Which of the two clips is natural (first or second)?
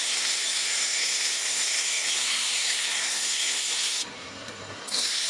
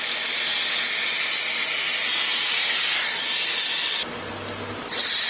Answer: second